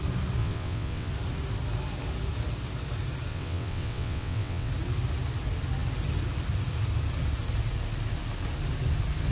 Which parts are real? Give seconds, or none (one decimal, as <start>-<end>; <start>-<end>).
0.0-0.4; 1.1-3.3; 4.7-9.3

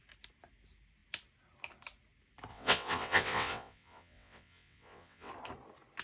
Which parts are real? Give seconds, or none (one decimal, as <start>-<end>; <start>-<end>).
0.0-2.5; 5.3-6.0

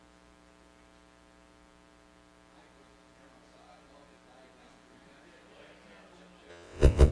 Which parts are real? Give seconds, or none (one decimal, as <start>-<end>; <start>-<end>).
0.0-6.5

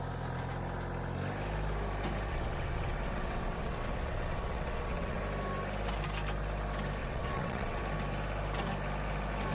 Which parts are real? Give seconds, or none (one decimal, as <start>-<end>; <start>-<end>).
0.0-2.3; 5.2-7.0; 7.8-9.5

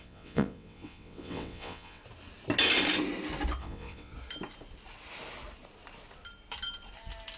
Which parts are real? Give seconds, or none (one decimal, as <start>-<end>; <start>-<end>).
2.0-3.6; 4.1-7.4

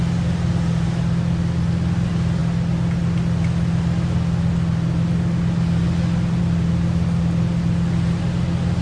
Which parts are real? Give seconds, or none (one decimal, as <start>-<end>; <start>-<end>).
0.0-8.8